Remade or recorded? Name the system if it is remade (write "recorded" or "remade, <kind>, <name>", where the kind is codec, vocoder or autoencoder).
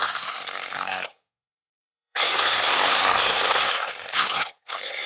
remade, codec, SNAC